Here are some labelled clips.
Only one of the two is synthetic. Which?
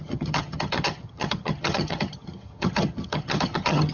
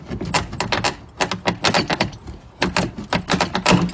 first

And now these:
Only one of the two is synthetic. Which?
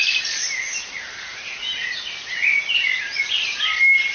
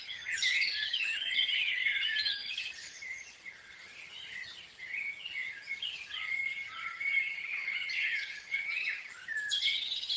second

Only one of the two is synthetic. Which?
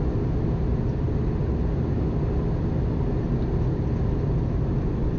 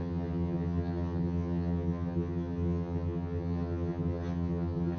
second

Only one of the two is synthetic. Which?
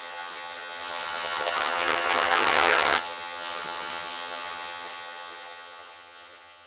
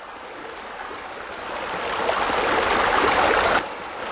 first